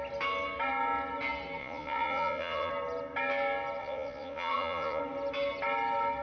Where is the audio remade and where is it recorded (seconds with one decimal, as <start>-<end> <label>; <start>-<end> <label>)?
0.0-1.6 recorded; 1.6-2.7 remade; 2.7-3.8 recorded; 3.8-5.0 remade; 5.0-6.2 recorded